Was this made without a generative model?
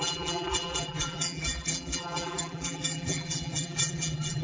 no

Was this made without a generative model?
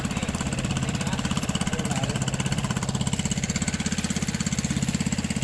no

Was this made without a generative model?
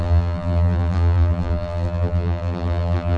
no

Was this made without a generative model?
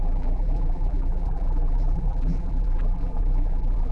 no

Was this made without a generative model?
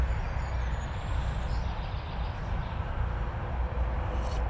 yes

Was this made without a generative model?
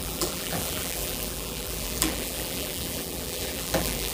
no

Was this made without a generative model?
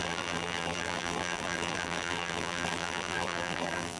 no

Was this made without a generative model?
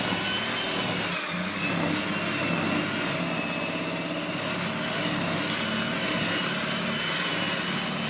yes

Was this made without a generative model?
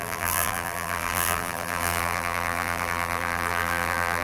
no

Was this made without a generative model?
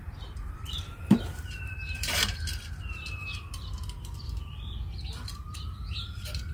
no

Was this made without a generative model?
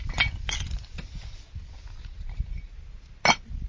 yes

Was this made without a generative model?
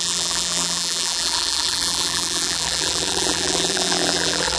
no